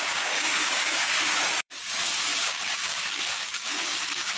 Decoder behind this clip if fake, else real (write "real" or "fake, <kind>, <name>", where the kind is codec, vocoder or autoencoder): fake, codec, DAC